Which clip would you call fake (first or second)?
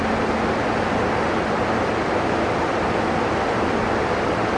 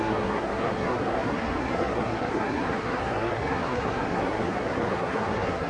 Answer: second